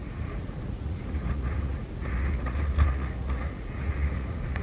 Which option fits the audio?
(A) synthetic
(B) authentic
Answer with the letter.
A